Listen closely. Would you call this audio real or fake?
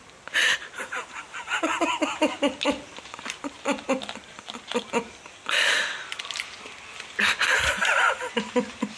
fake